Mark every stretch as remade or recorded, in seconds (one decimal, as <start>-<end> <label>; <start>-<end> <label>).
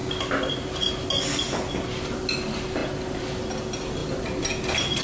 0.0-5.0 recorded